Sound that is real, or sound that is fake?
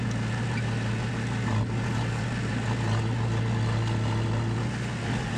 real